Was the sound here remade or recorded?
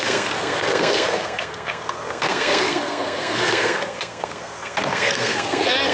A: remade